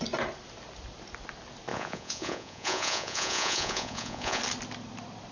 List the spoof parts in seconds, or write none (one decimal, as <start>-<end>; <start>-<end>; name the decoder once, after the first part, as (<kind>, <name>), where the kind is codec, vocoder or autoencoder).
1.7-4.4 (vocoder, Vocos)